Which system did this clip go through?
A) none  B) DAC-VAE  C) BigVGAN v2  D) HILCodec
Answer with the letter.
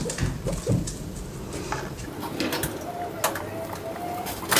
A